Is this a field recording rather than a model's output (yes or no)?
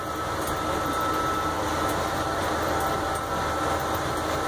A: yes